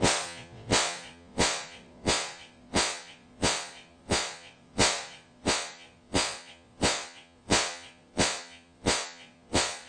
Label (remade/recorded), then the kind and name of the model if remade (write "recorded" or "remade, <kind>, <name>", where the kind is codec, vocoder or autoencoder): remade, vocoder, Vocos